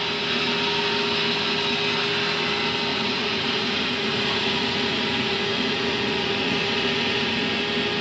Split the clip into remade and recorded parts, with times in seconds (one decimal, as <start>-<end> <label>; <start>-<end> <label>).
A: 0.0-2.9 recorded; 2.9-7.6 remade; 7.6-8.0 recorded